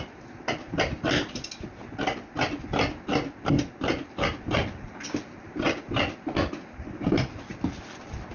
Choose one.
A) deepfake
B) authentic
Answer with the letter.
B